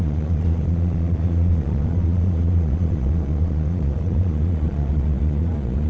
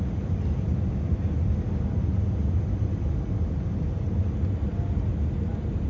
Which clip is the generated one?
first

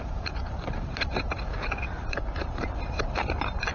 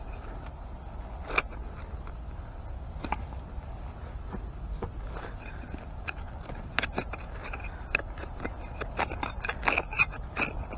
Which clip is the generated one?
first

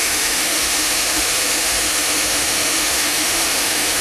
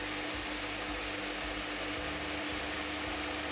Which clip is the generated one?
first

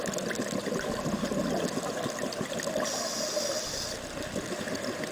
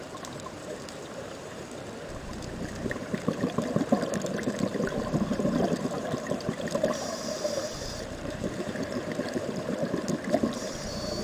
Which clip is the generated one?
second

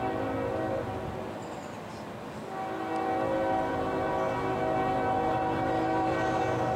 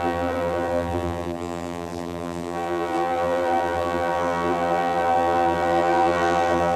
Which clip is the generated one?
second